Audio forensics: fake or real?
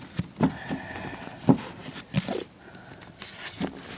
real